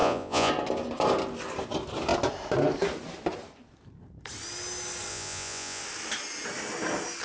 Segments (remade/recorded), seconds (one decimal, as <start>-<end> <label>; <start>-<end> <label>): 0.0-0.5 remade; 0.5-5.1 recorded; 5.1-5.8 remade; 5.8-7.2 recorded